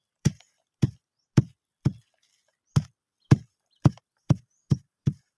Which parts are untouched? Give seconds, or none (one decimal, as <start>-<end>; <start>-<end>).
1.1-3.9